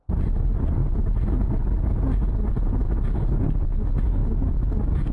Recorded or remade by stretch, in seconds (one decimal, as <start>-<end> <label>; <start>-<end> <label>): 0.0-5.1 recorded